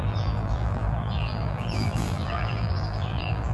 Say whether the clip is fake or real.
fake